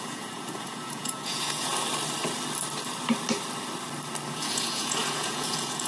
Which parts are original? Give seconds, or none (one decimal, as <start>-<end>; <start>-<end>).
1.7-4.3